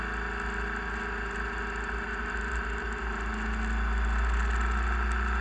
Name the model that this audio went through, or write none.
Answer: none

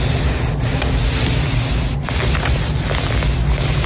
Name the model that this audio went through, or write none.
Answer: none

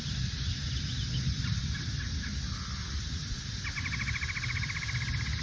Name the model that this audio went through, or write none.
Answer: none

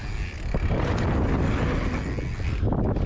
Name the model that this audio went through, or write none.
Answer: none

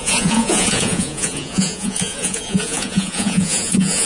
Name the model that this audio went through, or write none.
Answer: vocoder, Vocos